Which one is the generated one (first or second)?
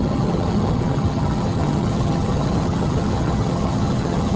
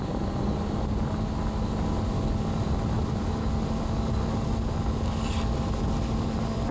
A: first